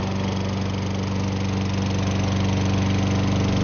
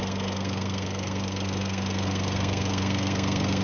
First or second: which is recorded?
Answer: first